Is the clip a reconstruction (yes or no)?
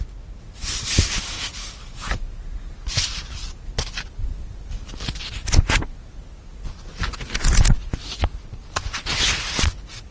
no